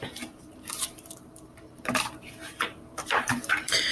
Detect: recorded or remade remade